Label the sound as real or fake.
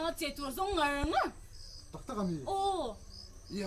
real